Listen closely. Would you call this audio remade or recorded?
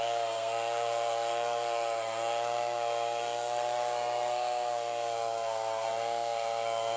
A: remade